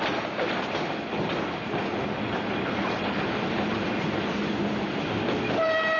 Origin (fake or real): real